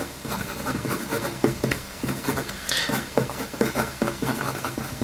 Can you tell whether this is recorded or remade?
remade